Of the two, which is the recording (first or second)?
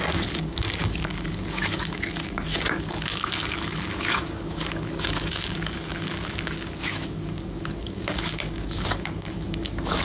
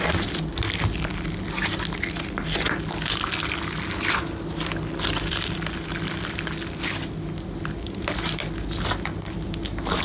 second